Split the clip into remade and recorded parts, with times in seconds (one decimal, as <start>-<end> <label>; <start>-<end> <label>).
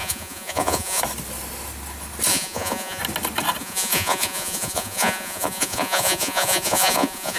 0.0-1.0 remade; 1.0-2.3 recorded; 2.3-3.0 remade; 3.0-3.6 recorded; 3.6-7.4 remade